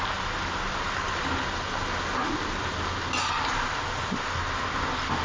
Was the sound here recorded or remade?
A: recorded